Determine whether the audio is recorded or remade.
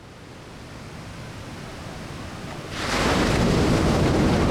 recorded